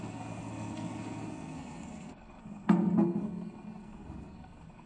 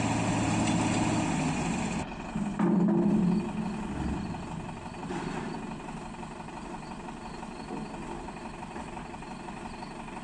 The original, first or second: second